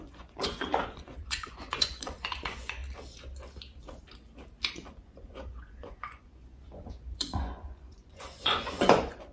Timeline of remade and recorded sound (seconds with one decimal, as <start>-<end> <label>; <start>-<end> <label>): 0.0-2.8 remade; 2.8-4.7 recorded; 4.7-9.3 remade